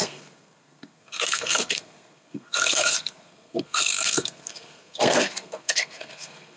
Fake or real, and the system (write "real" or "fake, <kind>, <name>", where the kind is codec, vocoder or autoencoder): fake, codec, SNAC